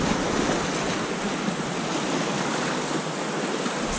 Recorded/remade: recorded